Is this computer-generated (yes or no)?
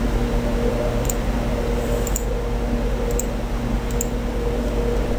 no